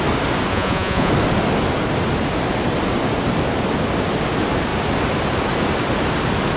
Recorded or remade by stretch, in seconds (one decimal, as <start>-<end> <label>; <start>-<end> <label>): 0.0-0.5 recorded; 0.5-1.1 remade; 1.1-6.6 recorded